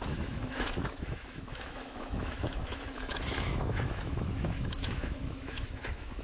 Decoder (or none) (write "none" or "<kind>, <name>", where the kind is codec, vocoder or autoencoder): autoencoder, DAC-VAE